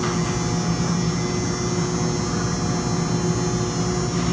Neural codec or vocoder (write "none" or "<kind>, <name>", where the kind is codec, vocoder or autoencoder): none